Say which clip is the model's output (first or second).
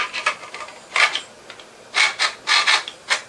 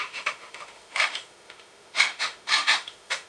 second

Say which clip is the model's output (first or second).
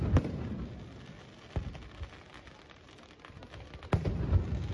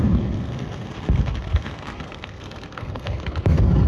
second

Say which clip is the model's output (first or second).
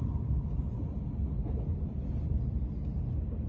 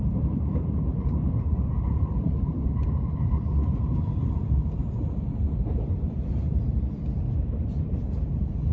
second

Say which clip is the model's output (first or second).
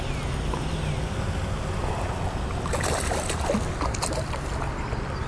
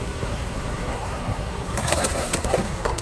second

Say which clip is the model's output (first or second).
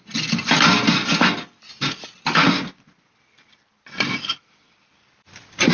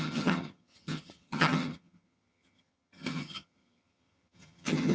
second